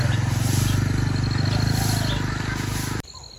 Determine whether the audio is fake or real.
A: real